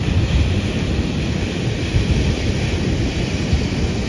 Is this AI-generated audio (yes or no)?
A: no